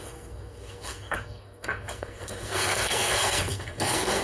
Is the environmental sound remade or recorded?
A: remade